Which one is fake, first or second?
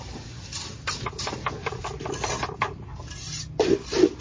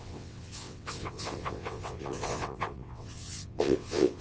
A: second